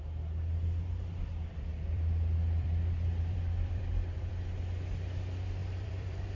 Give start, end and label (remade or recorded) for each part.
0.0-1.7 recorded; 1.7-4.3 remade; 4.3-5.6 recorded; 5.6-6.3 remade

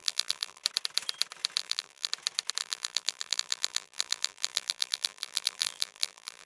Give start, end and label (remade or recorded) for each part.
0.0-0.6 remade; 0.6-1.6 recorded; 1.6-2.1 remade; 2.1-2.6 recorded; 2.6-6.5 remade

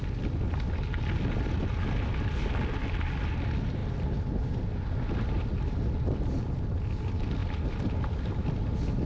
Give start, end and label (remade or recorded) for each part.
0.0-9.1 recorded

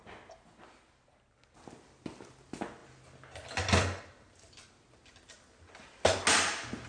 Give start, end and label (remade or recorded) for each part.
0.0-6.9 recorded

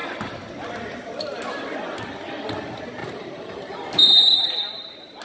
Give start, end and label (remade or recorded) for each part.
0.0-3.0 recorded; 3.0-5.2 remade

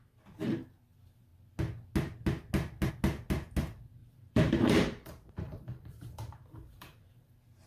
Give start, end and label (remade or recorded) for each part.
0.0-4.0 recorded; 4.0-7.3 remade; 7.3-7.7 recorded

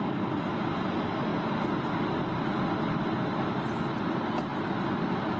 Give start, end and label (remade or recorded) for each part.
0.0-5.4 recorded